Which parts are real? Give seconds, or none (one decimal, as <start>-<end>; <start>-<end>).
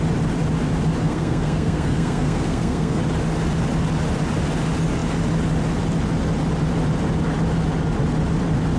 0.0-1.0; 3.0-8.8